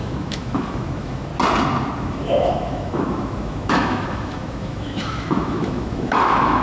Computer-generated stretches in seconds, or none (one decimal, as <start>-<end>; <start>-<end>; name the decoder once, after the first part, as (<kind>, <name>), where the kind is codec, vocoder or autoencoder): 0.0-1.3 (autoencoder, DAC-VAE); 2.0-6.6